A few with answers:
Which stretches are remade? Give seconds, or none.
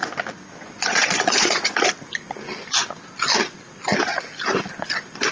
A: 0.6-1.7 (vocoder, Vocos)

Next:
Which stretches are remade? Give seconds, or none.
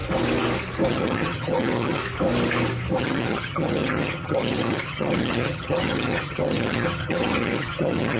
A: 0.9-2.0 (vocoder, HiFi-GAN); 3.0-8.2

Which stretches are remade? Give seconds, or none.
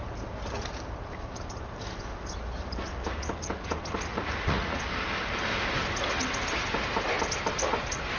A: 4.1-4.8 (vocoder, Vocos)